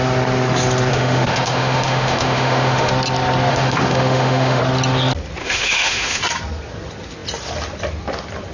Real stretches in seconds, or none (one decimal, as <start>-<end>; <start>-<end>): 0.0-0.9; 2.9-3.5; 4.6-5.4; 6.2-8.5